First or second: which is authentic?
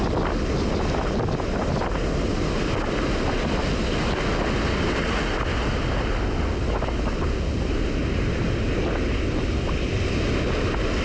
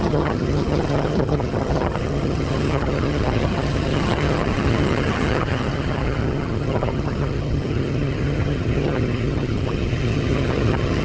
first